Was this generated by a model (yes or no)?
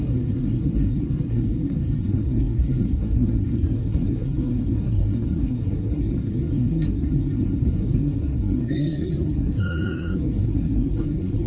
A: yes